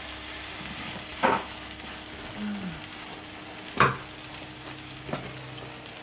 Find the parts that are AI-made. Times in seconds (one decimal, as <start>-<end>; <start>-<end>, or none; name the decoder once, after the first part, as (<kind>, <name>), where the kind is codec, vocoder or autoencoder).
none